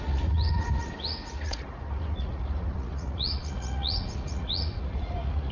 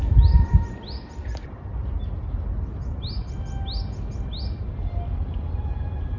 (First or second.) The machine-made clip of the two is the first